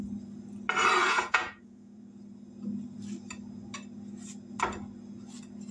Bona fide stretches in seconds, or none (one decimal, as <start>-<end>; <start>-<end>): 0.0-1.0; 2.0-5.7